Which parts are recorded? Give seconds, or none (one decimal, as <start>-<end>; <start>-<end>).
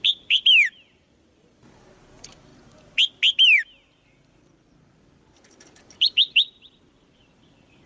2.5-5.8